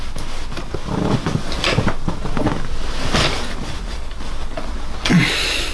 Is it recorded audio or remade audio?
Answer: recorded